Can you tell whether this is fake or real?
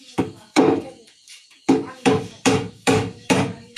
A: fake